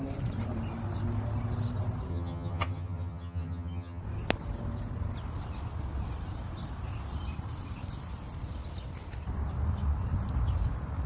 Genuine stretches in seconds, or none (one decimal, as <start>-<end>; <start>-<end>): 0.0-2.1; 4.0-11.1